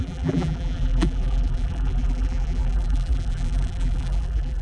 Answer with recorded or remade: remade